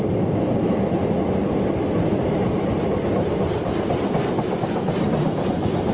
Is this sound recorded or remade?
recorded